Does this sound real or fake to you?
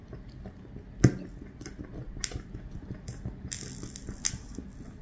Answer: real